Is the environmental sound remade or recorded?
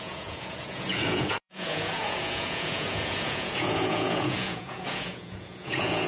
remade